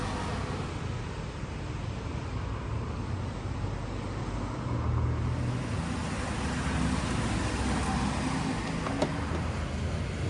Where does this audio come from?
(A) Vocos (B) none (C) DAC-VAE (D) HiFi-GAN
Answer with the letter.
B